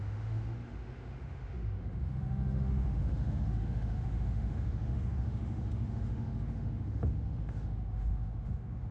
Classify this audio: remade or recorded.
remade